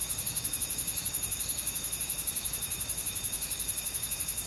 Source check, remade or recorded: remade